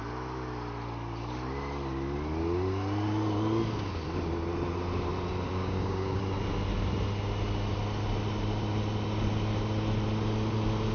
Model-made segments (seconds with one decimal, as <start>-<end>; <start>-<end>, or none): 5.5-6.2